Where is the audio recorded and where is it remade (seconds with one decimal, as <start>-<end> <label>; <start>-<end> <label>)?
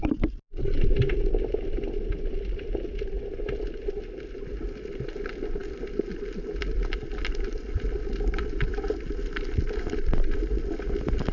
0.0-11.3 recorded